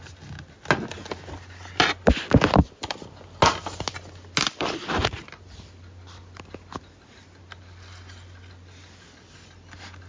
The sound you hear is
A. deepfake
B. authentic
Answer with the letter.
B